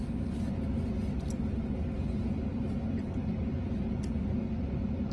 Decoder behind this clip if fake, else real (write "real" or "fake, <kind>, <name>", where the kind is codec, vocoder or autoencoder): real